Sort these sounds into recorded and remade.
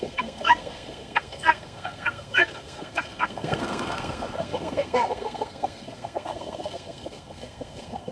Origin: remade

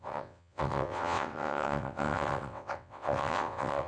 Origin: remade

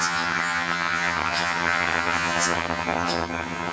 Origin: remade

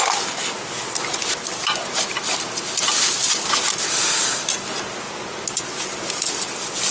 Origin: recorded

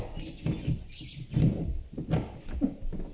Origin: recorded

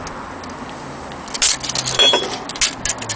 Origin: recorded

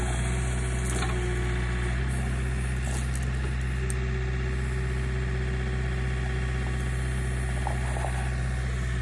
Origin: recorded